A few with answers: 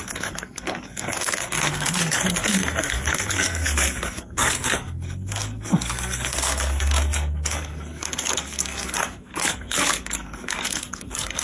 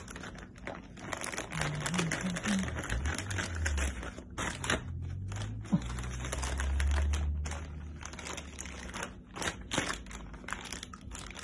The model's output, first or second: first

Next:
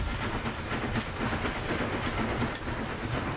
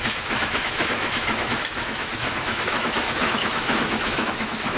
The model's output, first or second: second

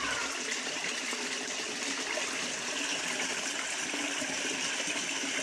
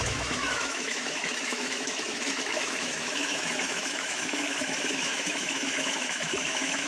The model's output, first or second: second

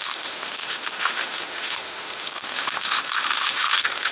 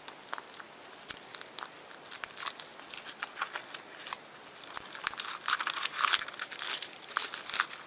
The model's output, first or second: first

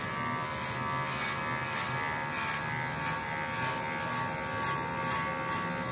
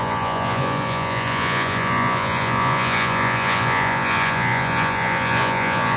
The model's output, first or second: second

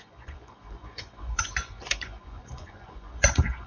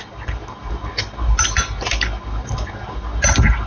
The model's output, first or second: first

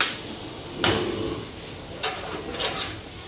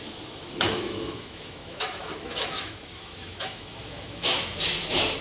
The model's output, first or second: second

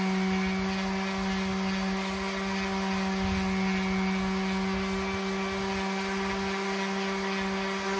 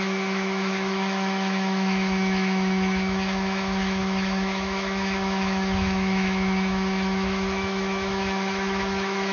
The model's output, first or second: second